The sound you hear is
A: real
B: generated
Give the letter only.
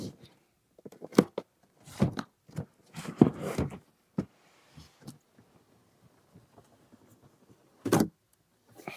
A